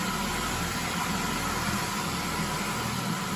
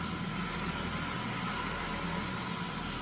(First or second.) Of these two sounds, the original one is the second